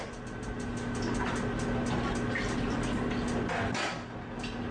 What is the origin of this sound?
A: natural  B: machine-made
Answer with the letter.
A